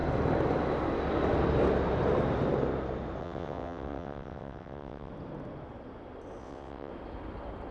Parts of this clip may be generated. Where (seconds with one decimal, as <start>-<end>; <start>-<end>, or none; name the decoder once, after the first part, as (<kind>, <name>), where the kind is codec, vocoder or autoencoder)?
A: 3.2-5.1 (vocoder, WaveNeXt); 6.4-6.9